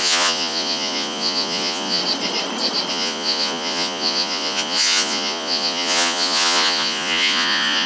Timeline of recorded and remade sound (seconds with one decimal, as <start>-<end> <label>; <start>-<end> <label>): 0.0-2.0 remade; 2.0-2.9 recorded; 2.9-7.9 remade